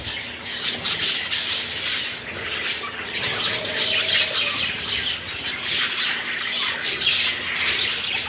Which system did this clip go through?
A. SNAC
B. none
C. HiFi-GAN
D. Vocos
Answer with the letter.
B